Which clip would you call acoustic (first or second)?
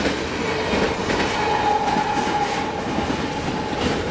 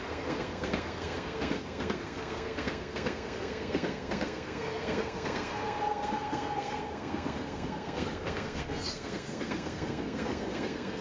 first